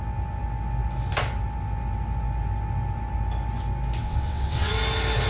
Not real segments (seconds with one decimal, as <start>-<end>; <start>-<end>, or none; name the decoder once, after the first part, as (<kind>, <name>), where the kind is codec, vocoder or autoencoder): 4.0-4.7 (vocoder, WaveNeXt)